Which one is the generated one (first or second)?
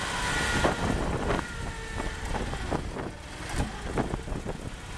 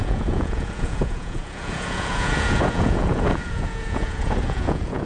second